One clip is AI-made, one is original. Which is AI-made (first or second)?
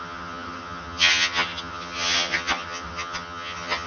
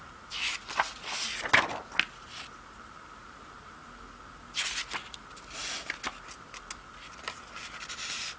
first